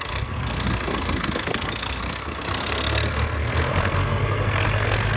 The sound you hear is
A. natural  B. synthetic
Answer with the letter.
B